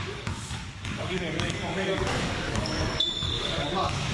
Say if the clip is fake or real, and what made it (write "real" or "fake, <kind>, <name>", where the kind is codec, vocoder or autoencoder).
fake, codec, DAC